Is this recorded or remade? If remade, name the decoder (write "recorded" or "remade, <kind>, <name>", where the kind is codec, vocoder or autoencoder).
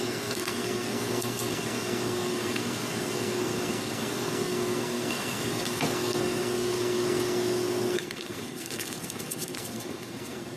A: remade, codec, SNAC